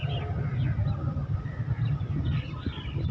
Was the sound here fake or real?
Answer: real